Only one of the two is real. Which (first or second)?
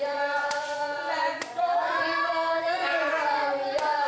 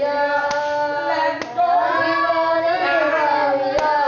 second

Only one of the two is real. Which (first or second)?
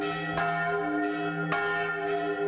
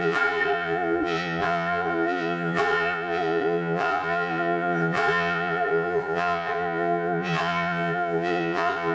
first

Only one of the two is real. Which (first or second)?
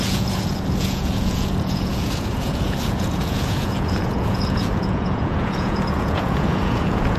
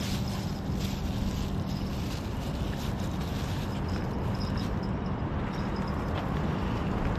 second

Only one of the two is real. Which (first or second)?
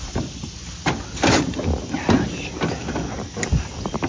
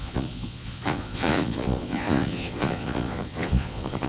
first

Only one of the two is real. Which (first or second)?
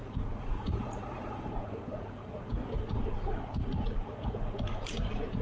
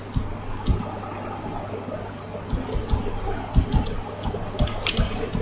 second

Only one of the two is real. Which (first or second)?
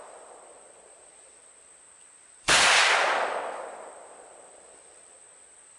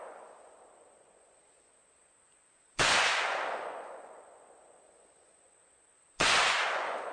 first